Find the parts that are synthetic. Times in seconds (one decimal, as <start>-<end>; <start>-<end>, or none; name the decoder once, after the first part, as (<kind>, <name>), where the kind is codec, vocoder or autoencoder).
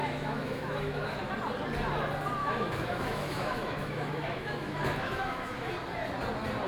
0.0-1.2 (autoencoder, DAC-VAE); 2.4-5.7